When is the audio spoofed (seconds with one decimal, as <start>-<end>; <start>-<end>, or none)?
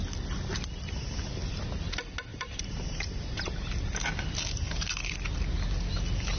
2.3-3.4